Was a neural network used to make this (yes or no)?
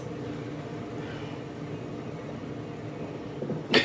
no